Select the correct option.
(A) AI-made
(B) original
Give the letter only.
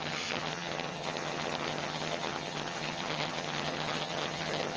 A